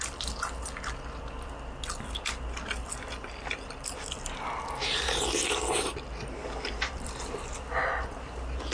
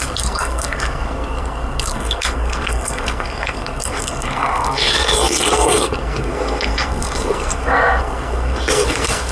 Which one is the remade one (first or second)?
second